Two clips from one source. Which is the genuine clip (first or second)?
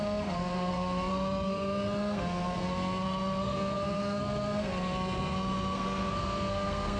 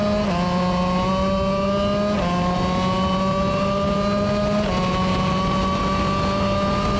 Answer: second